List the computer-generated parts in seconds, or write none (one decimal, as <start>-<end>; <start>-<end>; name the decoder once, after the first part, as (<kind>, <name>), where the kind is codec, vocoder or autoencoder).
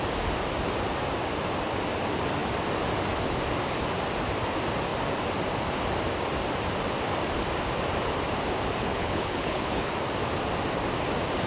8.9-9.9 (codec, HILCodec)